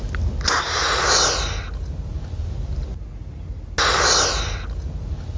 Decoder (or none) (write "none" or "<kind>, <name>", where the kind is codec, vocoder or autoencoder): none